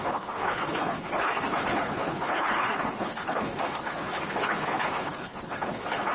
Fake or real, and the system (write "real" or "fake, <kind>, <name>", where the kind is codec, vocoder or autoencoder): fake, codec, HILCodec